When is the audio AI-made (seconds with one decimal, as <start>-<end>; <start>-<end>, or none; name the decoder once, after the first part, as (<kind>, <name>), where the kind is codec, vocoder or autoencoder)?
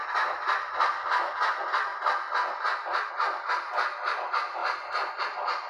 0.0-1.3 (vocoder, BigVGAN v2)